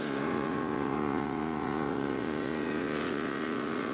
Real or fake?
fake